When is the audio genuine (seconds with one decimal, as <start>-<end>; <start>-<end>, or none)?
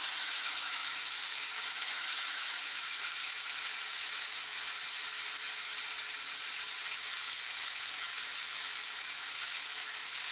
4.7-6.8